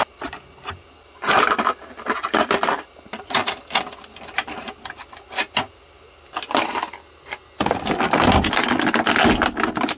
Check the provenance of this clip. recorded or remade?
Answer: recorded